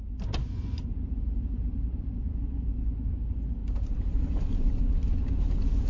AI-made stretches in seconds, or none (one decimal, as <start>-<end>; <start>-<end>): 1.4-2.8; 3.6-4.8